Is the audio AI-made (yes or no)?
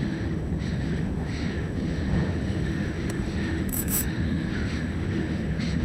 yes